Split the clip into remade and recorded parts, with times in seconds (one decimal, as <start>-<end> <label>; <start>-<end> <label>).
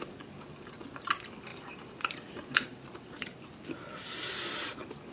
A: 0.0-1.5 recorded; 1.5-3.5 remade; 3.5-5.1 recorded